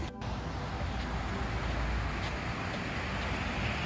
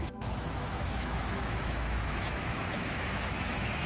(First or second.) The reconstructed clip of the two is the second